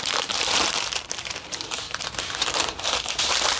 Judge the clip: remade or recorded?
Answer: remade